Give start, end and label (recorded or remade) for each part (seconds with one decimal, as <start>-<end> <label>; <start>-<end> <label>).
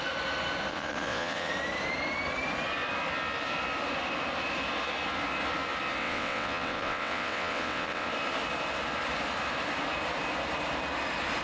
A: 0.0-0.7 recorded; 0.7-1.5 remade; 1.5-6.0 recorded; 6.0-8.1 remade; 8.1-11.4 recorded